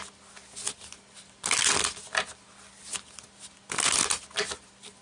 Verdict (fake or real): real